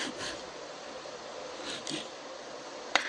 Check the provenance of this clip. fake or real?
fake